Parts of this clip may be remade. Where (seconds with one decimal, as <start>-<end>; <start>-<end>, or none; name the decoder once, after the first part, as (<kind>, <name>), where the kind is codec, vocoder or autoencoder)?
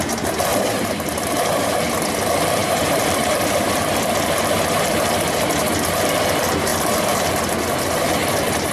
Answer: 0.5-1.8 (vocoder, BigVGAN v2); 2.6-3.7; 6.7-7.3